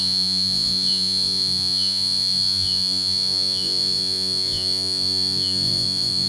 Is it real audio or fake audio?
fake